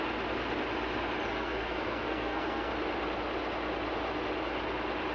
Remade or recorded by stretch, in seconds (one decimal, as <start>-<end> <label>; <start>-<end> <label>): 0.0-1.3 recorded; 1.3-2.7 remade; 2.7-5.1 recorded